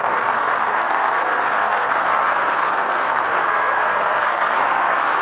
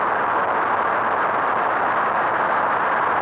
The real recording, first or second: second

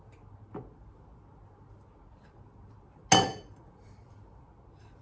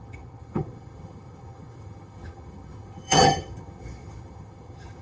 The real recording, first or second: first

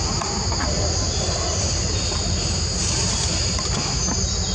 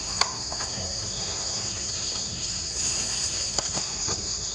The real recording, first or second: first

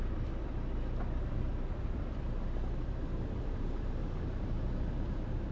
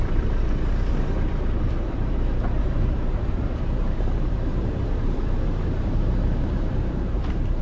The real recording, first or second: first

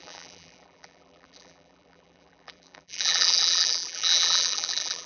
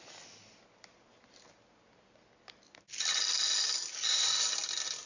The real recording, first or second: second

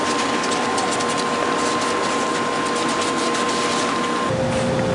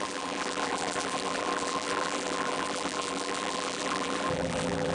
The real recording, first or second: first